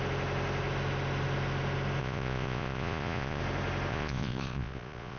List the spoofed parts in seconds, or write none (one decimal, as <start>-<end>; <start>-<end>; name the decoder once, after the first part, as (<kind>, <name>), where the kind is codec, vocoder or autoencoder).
2.0-3.4 (vocoder, Vocos); 3.9-5.2

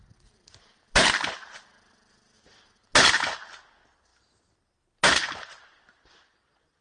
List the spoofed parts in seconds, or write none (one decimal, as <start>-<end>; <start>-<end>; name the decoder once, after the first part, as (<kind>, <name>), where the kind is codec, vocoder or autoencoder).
none

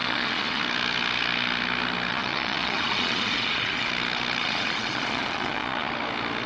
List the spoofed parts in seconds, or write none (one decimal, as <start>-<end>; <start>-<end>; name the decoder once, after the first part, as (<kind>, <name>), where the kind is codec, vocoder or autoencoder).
0.0-0.6 (vocoder, Vocos); 2.1-3.9; 4.4-5.9

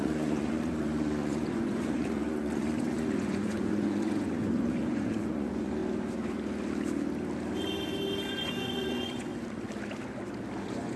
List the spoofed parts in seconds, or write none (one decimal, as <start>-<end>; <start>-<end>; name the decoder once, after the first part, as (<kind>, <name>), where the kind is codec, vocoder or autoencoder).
0.0-5.8 (vocoder, Vocos); 8.3-9.3; 10.6-11.0

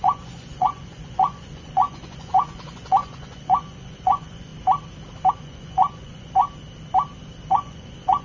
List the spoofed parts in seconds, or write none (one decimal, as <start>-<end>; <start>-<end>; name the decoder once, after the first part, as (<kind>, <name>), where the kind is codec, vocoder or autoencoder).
0.0-4.5 (vocoder, Vocos); 5.3-6.4; 7.5-8.2